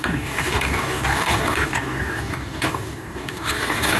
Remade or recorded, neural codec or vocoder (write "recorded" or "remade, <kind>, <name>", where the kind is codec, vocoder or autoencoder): remade, codec, DAC